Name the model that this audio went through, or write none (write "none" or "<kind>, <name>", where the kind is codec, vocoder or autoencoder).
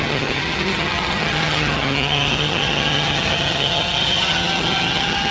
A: vocoder, HiFi-GAN